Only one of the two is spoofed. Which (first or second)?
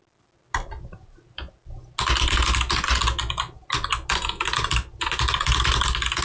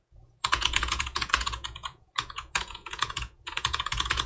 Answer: second